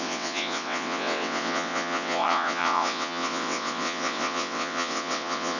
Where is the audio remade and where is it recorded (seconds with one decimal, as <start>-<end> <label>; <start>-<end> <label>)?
0.0-5.6 remade

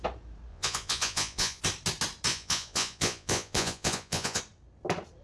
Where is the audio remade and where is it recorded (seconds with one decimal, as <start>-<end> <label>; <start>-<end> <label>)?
0.0-0.5 recorded; 0.5-1.6 remade; 1.6-2.3 recorded; 2.3-4.4 remade; 4.4-5.2 recorded

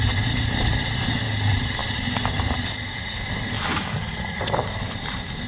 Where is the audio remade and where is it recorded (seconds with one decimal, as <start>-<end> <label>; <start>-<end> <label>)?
0.0-5.5 recorded

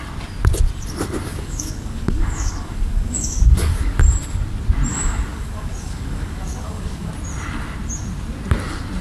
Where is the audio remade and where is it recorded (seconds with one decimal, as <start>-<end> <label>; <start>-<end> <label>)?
0.0-1.3 recorded; 1.3-4.0 remade; 4.0-4.9 recorded; 4.9-7.1 remade; 7.1-9.0 recorded

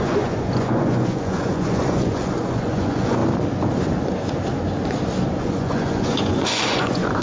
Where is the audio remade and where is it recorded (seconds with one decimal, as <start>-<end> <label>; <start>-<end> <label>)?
0.0-3.2 remade; 3.2-5.4 recorded; 5.4-7.2 remade